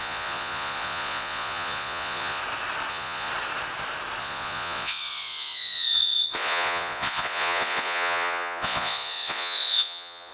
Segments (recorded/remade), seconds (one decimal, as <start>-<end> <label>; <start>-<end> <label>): 0.0-2.4 remade; 2.4-2.9 recorded; 2.9-3.3 remade; 3.3-4.2 recorded; 4.2-10.3 remade